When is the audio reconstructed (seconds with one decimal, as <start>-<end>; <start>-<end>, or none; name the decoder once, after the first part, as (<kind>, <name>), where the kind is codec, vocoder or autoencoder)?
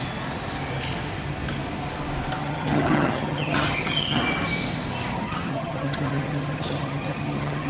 2.4-4.2 (vocoder, HiFi-GAN); 5.1-7.7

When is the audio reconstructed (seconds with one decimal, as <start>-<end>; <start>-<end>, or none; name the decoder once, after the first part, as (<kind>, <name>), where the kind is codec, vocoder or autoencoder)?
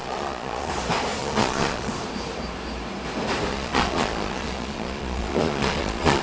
0.0-0.7 (vocoder, Vocos); 1.2-1.9; 3.5-6.2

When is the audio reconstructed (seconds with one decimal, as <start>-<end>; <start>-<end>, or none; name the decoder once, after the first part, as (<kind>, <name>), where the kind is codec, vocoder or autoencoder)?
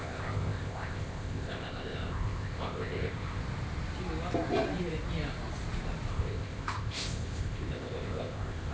0.0-3.4 (codec, ZipCodec); 6.1-8.7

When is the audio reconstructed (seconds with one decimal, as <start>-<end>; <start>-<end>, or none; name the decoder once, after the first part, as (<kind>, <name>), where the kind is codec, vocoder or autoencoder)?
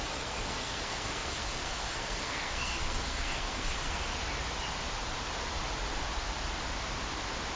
0.0-4.1 (codec, SNAC)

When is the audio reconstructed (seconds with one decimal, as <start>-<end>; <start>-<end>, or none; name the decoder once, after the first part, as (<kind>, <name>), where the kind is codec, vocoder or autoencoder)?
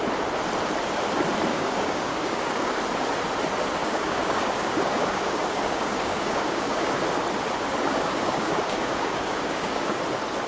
1.5-2.8 (codec, DAC); 3.8-6.9; 7.9-10.0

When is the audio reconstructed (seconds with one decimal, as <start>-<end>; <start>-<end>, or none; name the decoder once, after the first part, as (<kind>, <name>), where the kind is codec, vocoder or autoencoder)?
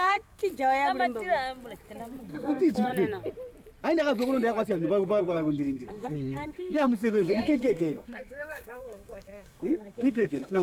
0.0-0.4 (codec, SNAC); 2.2-2.9; 5.2-10.6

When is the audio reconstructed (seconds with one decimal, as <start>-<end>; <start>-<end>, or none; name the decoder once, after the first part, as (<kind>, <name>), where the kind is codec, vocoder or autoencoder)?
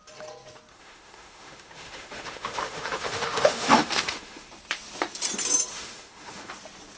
0.7-4.5 (autoencoder, DAC-VAE); 5.7-6.5